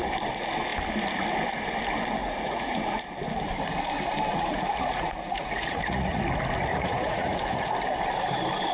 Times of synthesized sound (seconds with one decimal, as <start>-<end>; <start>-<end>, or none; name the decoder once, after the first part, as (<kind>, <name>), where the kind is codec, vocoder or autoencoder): 2.2-3.0 (vocoder, Vocos); 4.3-6.2; 6.7-7.7